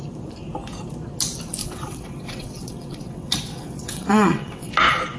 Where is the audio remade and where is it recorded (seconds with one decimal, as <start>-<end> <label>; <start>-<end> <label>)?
0.0-1.6 recorded; 1.6-4.7 remade; 4.7-5.2 recorded